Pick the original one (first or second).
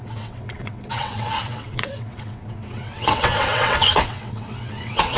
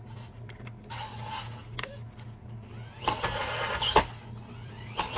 second